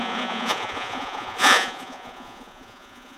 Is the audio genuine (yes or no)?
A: no